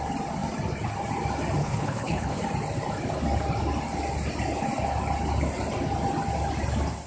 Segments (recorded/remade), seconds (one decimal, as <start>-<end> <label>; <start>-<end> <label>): 0.0-1.6 recorded; 1.6-2.4 remade; 2.4-7.1 recorded